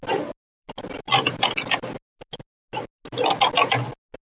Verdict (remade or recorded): recorded